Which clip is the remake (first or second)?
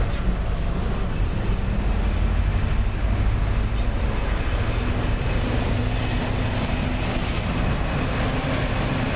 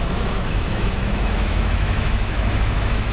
second